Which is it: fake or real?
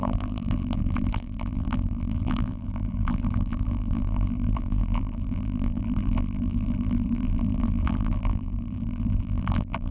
fake